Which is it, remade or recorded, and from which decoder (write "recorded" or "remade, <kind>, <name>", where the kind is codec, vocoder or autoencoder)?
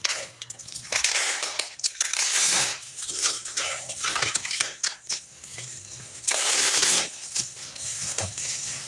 remade, codec, SNAC